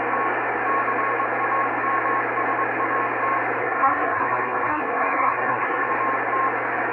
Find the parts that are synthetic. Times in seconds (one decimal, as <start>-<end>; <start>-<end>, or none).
3.6-5.9